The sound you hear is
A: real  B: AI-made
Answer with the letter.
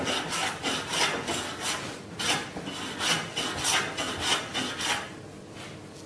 A